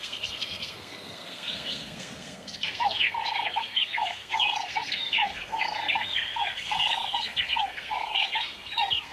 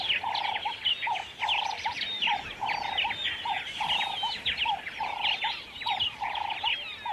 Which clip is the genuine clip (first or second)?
second